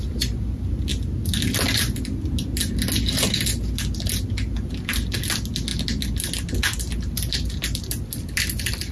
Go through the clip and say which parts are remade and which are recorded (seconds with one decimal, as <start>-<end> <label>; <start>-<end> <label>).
0.0-8.9 recorded